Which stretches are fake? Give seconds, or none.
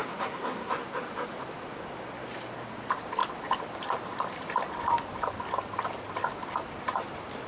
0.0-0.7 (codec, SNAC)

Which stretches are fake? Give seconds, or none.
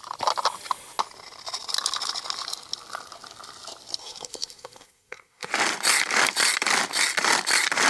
4.0-5.5 (codec, SNAC)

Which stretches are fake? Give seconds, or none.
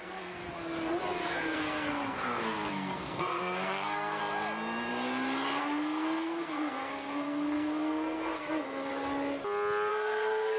0.0-0.4 (codec, SNAC); 1.2-4.2; 5.6-8.9; 9.9-10.6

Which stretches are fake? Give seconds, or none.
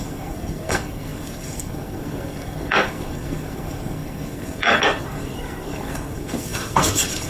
0.0-7.3 (codec, SNAC)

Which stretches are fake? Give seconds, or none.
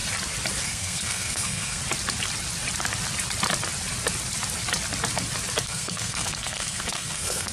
0.6-1.8 (codec, SNAC); 5.6-7.5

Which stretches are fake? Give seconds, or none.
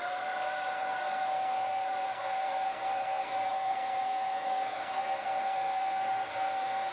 0.0-6.9 (codec, SNAC)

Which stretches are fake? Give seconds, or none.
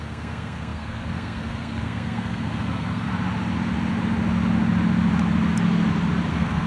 0.0-3.1 (codec, SNAC); 6.3-6.7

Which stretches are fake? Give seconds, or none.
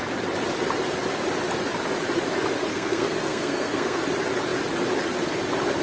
2.7-4.0 (codec, SNAC)